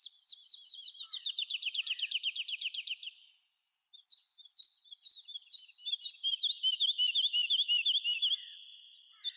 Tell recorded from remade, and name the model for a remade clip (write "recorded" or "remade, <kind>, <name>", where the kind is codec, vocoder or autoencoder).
recorded